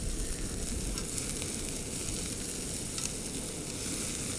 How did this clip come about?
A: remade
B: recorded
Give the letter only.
B